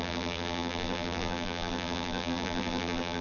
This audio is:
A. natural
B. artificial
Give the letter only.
B